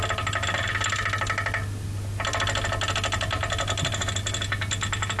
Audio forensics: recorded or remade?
recorded